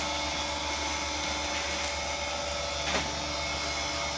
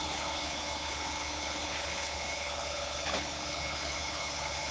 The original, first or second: first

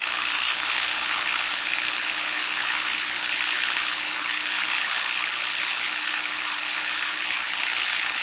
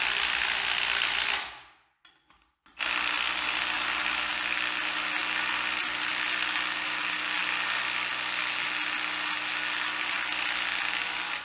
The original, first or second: second